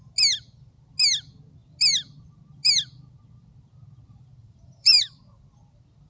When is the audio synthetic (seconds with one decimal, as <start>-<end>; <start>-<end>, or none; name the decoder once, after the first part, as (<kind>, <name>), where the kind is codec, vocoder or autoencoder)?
4.4-5.1 (vocoder, BigVGAN v2)